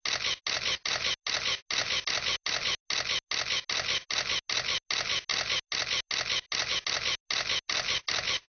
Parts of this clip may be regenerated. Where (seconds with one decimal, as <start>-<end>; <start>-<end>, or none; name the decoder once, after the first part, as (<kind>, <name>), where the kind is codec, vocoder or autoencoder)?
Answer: none

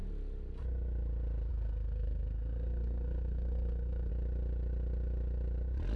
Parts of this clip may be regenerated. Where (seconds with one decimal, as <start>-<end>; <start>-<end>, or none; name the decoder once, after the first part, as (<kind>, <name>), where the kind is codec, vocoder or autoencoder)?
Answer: 1.5-4.1 (codec, SNAC)